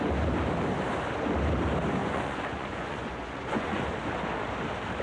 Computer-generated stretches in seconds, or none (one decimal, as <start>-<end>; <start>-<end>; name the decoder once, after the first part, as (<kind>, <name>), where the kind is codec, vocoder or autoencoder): 2.0-3.8 (vocoder, Vocos)